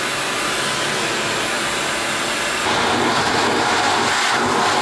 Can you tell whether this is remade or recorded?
recorded